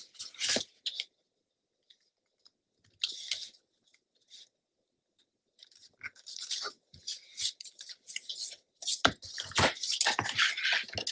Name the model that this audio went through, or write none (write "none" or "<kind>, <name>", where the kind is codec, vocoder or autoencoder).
none